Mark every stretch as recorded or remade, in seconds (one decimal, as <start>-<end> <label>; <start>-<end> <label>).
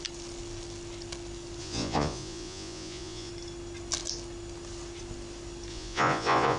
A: 0.0-1.6 recorded; 1.6-3.3 remade; 3.3-5.7 recorded; 5.7-6.6 remade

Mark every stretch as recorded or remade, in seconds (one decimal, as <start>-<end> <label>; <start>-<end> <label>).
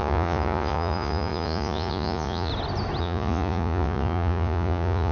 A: 0.0-2.5 remade; 2.5-3.0 recorded; 3.0-5.1 remade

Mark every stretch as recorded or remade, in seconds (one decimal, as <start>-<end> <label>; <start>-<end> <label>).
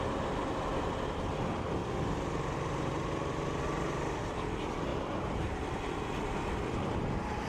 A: 0.0-4.9 recorded; 4.9-5.6 remade; 5.6-7.5 recorded